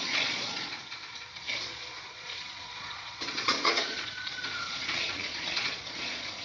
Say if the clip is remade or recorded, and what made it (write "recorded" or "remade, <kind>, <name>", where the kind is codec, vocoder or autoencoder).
remade, vocoder, Vocos